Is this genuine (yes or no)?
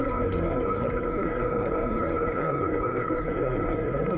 no